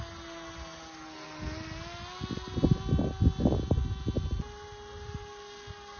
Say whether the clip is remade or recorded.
recorded